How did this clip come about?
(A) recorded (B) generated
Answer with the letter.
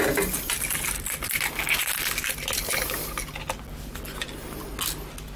A